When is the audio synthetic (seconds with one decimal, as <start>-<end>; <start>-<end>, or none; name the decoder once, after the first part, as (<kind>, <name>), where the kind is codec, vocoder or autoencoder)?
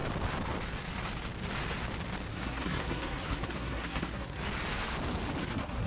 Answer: 2.3-4.4 (codec, SNAC); 5.4-5.9